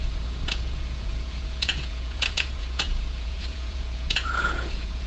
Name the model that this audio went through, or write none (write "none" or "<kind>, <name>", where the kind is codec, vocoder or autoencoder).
vocoder, Vocos